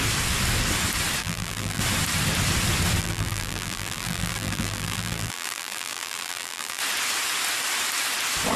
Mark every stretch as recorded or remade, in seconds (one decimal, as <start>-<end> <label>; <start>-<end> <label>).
0.0-1.2 recorded; 1.2-1.8 remade; 1.8-3.0 recorded; 3.0-6.8 remade; 6.8-8.6 recorded